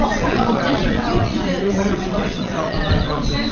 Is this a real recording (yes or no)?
no